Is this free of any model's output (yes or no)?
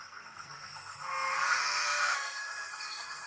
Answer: no